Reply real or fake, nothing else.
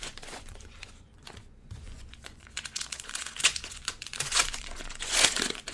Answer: fake